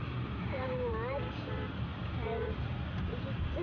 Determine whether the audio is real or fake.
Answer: fake